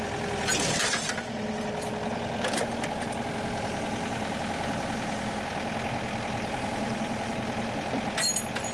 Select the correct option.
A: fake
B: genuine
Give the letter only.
B